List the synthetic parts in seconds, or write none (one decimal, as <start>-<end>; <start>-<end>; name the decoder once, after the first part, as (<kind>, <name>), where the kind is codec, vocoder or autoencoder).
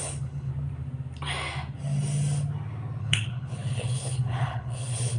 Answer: 0.0-0.5 (codec, HILCodec); 3.0-5.2